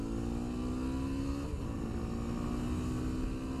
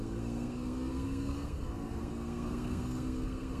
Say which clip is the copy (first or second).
second